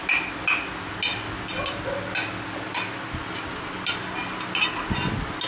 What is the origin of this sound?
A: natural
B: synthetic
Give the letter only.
A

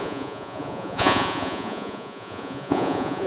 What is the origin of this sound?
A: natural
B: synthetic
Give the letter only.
B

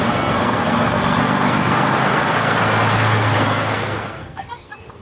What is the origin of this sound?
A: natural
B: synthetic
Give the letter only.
B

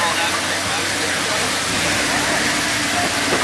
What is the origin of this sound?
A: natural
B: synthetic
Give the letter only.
A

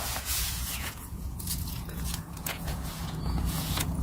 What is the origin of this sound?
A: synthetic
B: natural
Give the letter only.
A